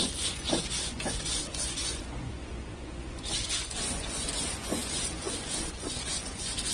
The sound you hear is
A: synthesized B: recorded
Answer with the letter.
A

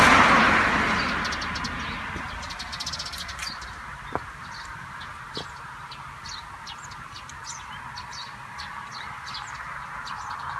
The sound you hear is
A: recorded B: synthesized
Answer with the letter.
A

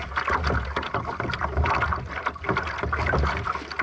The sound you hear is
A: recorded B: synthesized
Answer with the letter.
A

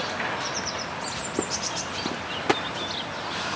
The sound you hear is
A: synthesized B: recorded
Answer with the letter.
B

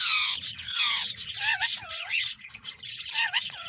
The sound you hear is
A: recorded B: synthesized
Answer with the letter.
B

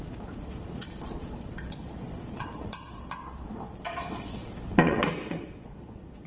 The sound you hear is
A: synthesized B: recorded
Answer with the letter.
A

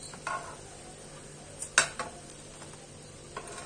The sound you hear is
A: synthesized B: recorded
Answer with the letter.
B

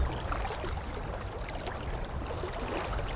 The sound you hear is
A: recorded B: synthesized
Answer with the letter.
A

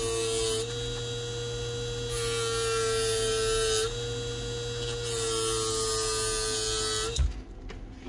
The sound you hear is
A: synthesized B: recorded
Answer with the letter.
B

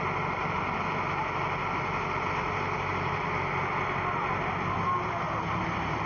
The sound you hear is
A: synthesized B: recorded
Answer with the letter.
B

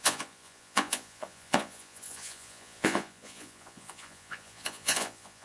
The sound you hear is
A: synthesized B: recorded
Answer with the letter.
A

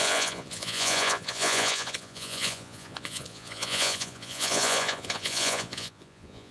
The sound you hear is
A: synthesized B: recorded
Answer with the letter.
A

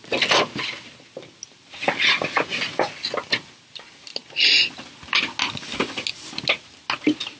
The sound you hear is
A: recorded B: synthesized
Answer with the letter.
A